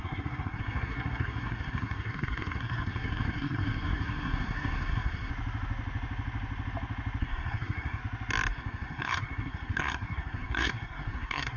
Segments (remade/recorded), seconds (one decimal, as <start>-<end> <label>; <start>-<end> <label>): 0.0-5.3 remade; 5.3-7.2 recorded; 7.2-8.0 remade; 8.0-8.5 recorded; 8.5-11.6 remade